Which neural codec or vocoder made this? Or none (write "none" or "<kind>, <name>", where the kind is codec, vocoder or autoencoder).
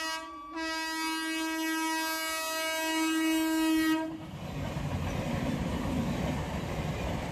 none